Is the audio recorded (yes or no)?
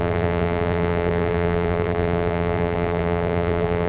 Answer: no